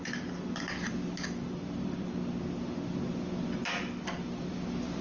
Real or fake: real